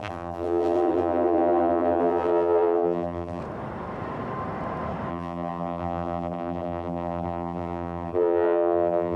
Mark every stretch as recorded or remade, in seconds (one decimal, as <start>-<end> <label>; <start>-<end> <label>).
0.0-3.4 remade; 3.4-5.1 recorded; 5.1-9.2 remade